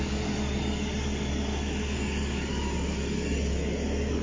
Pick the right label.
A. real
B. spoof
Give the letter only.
B